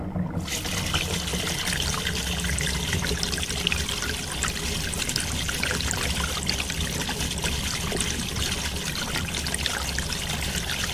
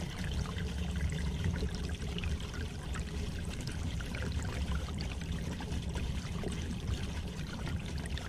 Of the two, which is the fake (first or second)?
second